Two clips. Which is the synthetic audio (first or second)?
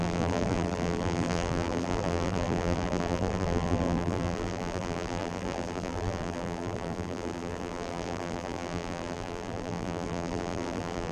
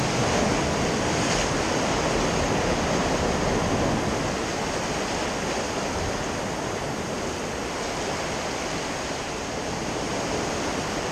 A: first